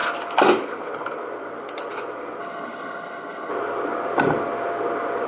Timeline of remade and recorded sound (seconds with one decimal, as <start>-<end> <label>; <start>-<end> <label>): 0.0-2.4 recorded; 2.4-3.5 remade; 3.5-5.3 recorded